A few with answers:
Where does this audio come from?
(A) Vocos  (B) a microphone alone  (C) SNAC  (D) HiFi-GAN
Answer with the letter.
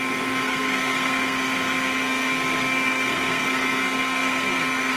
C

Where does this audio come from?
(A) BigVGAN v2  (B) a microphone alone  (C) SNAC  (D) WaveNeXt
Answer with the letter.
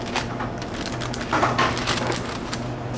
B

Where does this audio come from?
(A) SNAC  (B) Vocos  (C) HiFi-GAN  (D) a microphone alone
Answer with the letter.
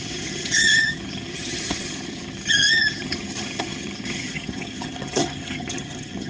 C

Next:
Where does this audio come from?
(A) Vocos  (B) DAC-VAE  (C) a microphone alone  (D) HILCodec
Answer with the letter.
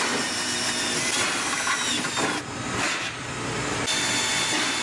C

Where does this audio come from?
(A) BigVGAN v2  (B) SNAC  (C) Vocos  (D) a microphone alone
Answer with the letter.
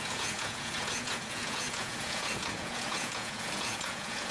C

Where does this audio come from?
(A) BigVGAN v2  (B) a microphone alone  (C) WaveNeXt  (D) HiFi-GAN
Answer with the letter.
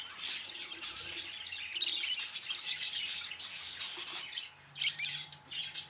B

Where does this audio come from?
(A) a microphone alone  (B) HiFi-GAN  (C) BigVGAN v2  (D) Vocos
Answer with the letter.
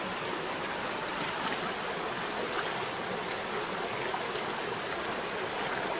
A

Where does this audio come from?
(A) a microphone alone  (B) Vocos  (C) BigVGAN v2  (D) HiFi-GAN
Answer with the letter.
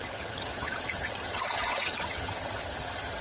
D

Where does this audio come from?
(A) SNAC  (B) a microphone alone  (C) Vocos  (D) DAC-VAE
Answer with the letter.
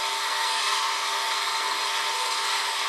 A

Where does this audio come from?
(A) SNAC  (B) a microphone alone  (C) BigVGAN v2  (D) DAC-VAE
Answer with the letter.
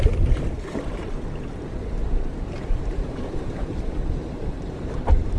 C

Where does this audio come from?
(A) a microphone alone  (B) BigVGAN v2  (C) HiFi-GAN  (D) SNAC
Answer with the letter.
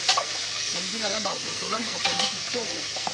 D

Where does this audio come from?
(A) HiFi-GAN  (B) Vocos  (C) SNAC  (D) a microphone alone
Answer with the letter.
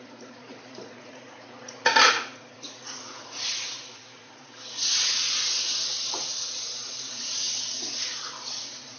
B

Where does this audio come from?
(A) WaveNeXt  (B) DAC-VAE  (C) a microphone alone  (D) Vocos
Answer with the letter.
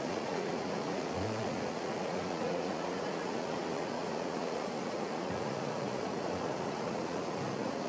D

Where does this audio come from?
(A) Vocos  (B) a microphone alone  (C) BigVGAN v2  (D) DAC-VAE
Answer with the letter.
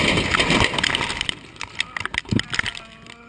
B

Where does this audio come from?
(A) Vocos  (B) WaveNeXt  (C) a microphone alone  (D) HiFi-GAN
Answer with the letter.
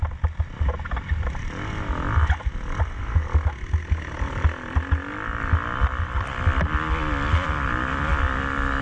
C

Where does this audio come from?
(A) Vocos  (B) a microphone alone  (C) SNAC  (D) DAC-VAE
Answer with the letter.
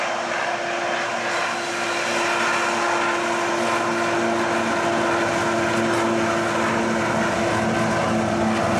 B